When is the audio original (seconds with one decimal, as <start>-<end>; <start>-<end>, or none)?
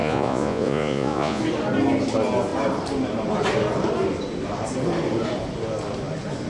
1.4-6.5